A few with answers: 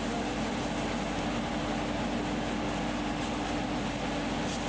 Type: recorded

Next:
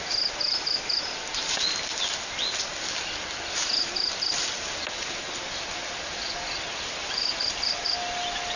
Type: recorded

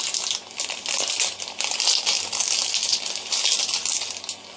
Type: recorded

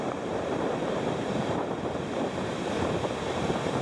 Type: remade